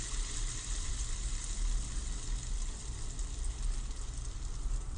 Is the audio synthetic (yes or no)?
no